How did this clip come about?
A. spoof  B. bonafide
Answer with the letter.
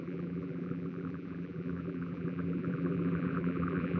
A